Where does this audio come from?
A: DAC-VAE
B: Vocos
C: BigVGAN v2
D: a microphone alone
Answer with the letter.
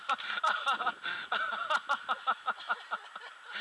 D